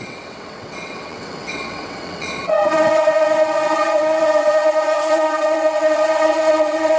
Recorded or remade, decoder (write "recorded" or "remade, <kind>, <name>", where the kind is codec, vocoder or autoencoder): remade, vocoder, WaveNeXt